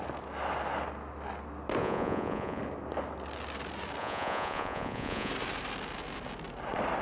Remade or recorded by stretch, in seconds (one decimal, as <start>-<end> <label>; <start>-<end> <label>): 0.0-1.8 recorded; 1.8-2.6 remade; 2.6-4.0 recorded; 4.0-5.3 remade; 5.3-7.0 recorded

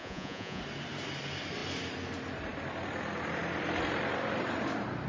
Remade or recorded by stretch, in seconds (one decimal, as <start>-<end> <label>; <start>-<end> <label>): 0.0-0.6 remade; 0.6-5.1 recorded

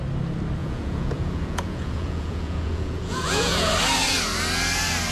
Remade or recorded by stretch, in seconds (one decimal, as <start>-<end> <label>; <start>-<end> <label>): 0.0-0.6 recorded; 0.6-3.7 remade; 3.7-5.1 recorded

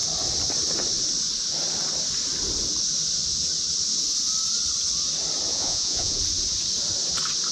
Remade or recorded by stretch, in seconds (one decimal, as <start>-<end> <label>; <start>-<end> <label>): 0.0-5.5 recorded; 5.5-6.2 remade; 6.2-7.5 recorded

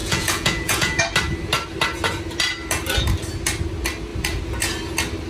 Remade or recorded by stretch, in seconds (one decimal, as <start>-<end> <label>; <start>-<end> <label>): 0.0-1.0 remade; 1.0-5.3 recorded

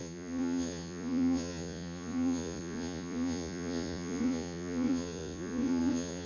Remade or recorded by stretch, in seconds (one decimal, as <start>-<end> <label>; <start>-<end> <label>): 0.0-6.3 remade

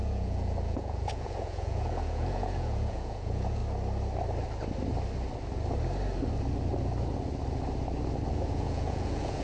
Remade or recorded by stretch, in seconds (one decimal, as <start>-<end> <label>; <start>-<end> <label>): 0.0-3.6 remade; 3.6-8.3 recorded; 8.3-9.4 remade